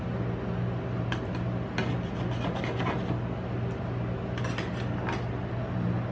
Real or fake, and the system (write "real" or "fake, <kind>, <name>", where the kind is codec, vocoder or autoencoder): real